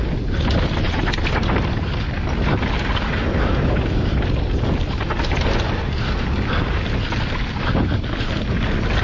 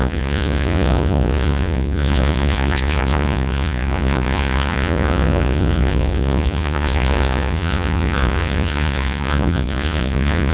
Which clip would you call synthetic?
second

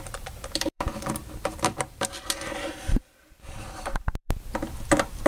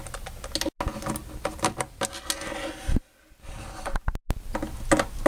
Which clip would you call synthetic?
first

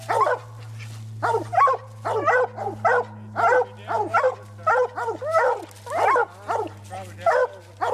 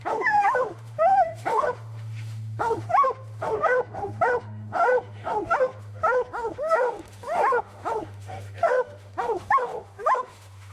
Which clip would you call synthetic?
second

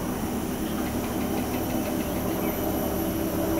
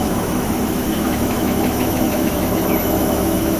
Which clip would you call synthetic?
second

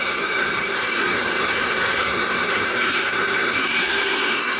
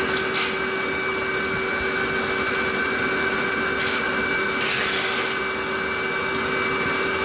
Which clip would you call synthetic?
first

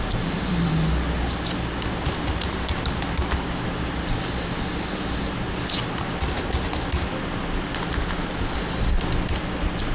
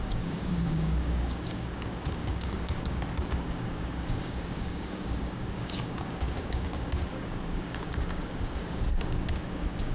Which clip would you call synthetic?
second